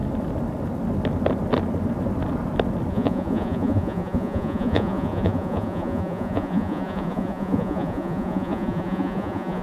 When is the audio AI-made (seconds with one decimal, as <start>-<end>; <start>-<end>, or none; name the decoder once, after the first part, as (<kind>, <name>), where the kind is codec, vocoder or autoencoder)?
2.9-9.6 (vocoder, Vocos)